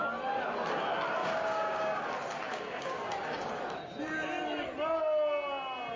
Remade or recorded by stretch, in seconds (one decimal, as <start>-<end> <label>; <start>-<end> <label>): 0.0-1.2 recorded; 1.2-2.0 remade; 2.0-2.5 recorded; 2.5-3.6 remade; 3.6-6.0 recorded